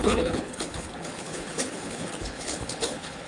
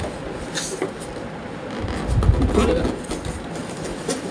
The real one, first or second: second